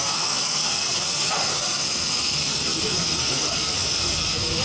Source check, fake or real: fake